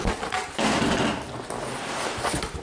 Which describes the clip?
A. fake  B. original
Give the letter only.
B